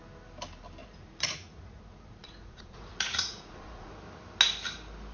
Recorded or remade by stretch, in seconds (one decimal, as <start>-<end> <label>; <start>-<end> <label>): 0.0-0.8 recorded; 0.8-3.9 remade; 3.9-5.1 recorded